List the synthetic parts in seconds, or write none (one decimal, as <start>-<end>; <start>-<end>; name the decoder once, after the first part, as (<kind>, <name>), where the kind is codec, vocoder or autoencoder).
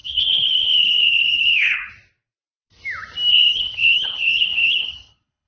0.0-1.9 (codec, HILCodec); 3.3-5.5